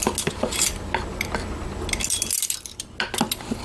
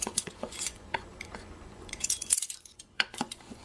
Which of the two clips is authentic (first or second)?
first